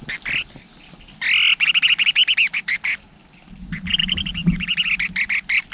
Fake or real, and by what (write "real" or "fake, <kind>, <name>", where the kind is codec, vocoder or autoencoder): real